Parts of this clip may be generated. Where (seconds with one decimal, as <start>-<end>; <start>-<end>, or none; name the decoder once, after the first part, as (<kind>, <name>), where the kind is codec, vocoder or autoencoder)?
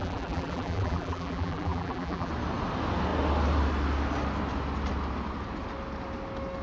0.0-2.3 (vocoder, BigVGAN v2)